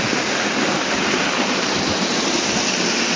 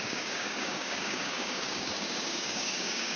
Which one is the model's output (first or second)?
second